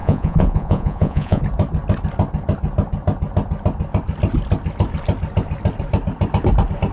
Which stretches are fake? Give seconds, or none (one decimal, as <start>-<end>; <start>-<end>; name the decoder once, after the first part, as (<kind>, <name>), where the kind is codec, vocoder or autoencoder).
0.0-1.4 (vocoder, Vocos)